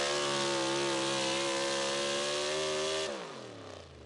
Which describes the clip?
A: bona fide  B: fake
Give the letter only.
A